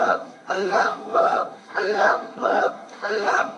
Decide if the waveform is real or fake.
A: fake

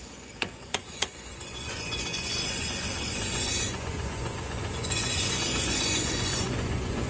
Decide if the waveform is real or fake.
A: fake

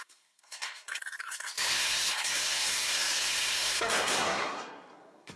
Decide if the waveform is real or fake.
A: fake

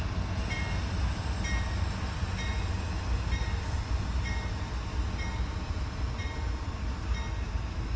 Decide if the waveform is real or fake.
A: real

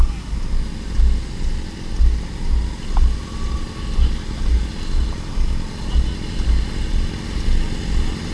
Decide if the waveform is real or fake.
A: real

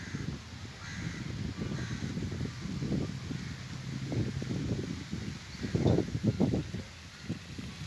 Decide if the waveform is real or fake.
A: real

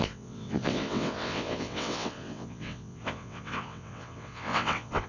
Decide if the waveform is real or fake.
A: fake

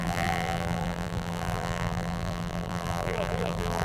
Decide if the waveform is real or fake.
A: fake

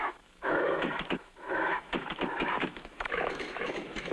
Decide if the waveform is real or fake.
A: fake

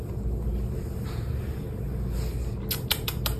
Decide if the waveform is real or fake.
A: real